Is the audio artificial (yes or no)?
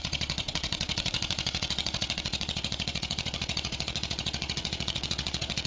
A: yes